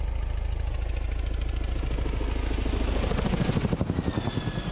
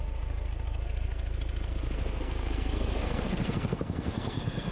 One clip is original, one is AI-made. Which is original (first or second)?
first